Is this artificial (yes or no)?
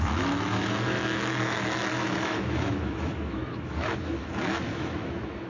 yes